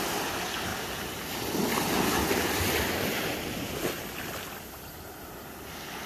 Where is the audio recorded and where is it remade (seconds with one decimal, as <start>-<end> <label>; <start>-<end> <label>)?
0.0-6.1 recorded